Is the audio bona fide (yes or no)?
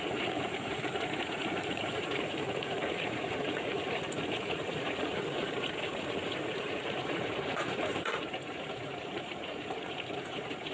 no